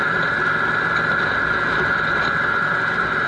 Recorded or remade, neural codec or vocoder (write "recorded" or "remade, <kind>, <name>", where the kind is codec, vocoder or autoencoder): recorded